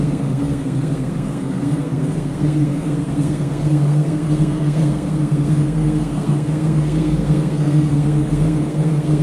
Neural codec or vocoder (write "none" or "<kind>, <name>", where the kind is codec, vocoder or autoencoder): codec, SNAC